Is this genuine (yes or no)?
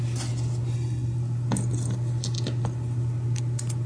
yes